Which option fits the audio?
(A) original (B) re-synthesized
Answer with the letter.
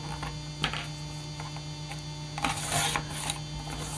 A